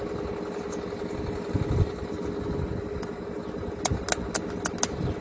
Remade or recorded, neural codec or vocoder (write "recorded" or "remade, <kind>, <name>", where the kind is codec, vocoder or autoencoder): recorded